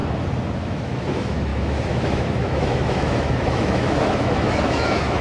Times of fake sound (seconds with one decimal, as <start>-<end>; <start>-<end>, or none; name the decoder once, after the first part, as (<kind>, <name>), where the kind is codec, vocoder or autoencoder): 0.6-5.2 (autoencoder, DAC-VAE)